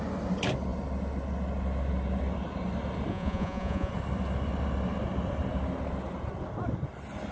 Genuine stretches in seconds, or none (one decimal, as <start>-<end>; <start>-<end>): 0.0-3.1; 3.9-7.3